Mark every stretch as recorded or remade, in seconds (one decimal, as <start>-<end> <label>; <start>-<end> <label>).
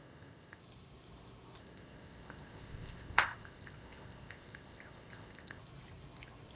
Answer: 0.0-0.6 remade; 0.6-1.6 recorded; 1.6-5.6 remade; 5.6-6.6 recorded